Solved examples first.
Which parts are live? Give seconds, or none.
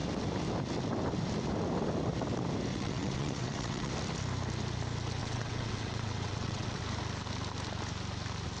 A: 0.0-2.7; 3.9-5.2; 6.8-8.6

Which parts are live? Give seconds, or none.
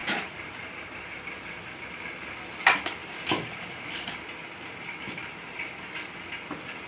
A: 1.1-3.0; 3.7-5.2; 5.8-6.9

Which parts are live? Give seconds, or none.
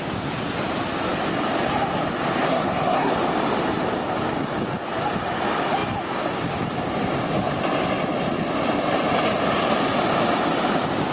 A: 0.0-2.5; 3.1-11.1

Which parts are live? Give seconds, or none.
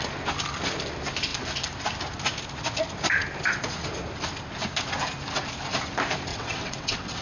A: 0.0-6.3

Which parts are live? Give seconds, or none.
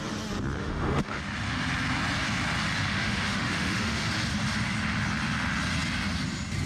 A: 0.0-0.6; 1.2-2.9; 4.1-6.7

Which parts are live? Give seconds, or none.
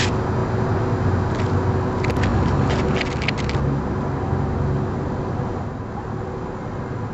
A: 0.0-7.1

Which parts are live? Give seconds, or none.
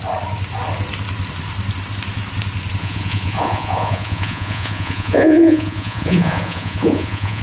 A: 0.0-2.8